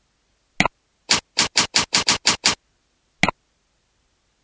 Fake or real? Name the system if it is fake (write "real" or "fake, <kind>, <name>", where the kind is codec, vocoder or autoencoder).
real